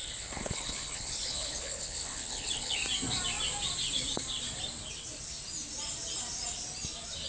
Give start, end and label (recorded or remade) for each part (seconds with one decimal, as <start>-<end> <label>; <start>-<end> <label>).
0.0-2.8 remade; 2.8-7.3 recorded